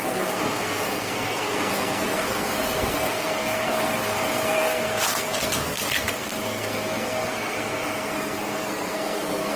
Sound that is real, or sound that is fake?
fake